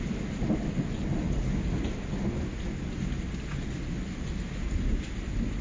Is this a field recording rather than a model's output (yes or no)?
yes